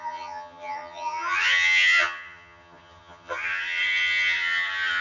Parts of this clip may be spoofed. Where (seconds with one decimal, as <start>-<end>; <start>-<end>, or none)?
0.0-5.0